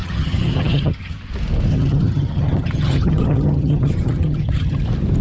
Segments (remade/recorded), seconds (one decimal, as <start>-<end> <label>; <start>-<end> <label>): 0.0-1.2 remade; 1.2-1.7 recorded; 1.7-4.8 remade; 4.8-5.2 recorded